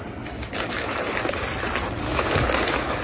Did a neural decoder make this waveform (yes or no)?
no